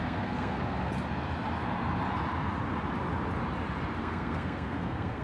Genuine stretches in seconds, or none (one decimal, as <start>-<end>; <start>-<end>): 0.9-4.0